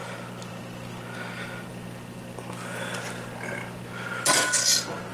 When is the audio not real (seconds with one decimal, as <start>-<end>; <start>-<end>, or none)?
none